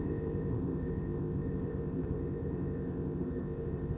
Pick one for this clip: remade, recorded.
remade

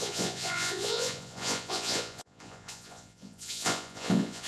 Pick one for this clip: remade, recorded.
remade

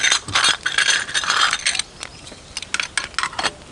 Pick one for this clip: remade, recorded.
recorded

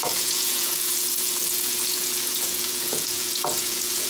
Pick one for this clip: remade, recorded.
remade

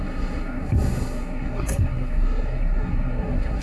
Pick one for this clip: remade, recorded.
remade